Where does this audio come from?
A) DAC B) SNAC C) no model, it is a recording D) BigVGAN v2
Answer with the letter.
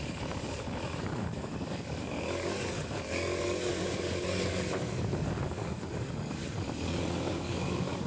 A